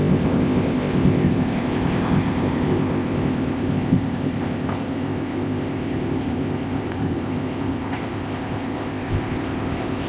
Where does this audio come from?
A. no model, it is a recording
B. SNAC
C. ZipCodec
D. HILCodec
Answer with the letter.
C